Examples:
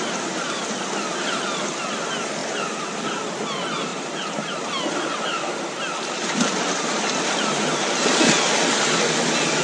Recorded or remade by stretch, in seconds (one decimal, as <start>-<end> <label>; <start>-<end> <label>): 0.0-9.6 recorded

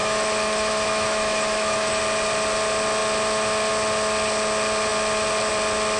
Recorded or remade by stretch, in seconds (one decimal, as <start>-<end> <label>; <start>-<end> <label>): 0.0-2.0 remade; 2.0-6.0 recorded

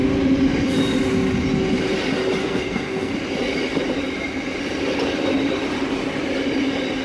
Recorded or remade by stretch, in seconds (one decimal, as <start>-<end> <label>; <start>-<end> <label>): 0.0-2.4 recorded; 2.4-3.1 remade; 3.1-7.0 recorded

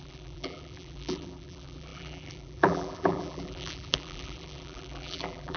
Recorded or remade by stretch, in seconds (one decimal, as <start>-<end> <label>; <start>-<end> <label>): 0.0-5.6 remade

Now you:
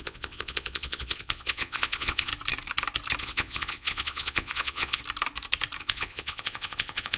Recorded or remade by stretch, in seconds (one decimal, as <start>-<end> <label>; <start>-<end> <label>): 0.0-2.3 remade; 2.3-3.2 recorded; 3.2-5.0 remade; 5.0-5.8 recorded; 5.8-7.2 remade